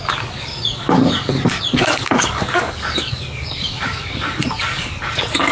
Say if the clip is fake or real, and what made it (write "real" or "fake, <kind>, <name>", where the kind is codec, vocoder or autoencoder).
fake, codec, DAC